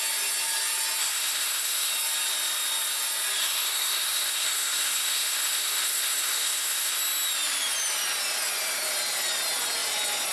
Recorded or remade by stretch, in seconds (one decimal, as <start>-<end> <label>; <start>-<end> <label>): 0.0-1.0 recorded; 1.0-1.9 remade; 1.9-3.4 recorded; 3.4-7.0 remade; 7.0-10.3 recorded